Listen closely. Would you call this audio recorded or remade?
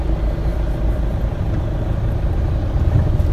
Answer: recorded